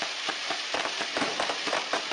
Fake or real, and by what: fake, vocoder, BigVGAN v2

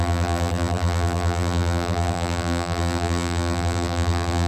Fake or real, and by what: fake, vocoder, BigVGAN v2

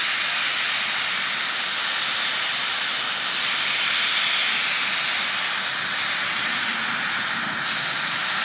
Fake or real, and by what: real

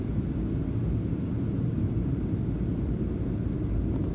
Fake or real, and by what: real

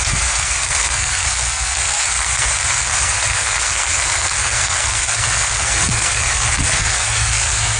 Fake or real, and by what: fake, codec, SNAC